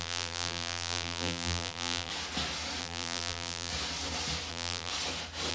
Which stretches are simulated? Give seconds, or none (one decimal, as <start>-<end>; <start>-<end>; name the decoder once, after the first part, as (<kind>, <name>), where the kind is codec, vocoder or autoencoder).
0.0-2.1 (vocoder, BigVGAN v2); 2.8-3.7; 4.5-4.9